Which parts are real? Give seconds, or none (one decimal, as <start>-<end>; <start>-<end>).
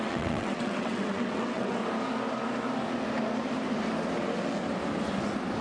1.8-5.6